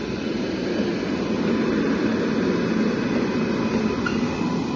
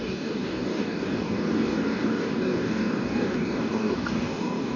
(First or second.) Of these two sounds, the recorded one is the first